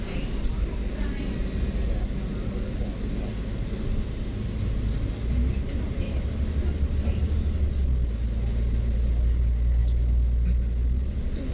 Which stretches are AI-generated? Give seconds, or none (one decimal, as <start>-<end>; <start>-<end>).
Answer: none